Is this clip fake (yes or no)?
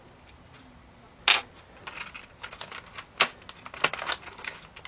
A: no